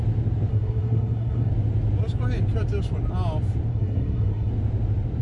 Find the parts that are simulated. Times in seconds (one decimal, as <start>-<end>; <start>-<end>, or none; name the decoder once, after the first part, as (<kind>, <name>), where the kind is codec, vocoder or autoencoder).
0.5-1.5 (codec, SNAC); 3.7-4.5